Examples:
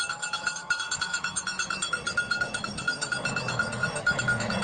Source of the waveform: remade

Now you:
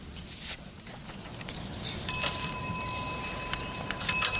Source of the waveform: recorded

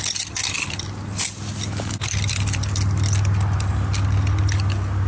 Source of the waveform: recorded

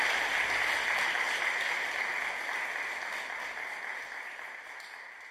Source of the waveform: recorded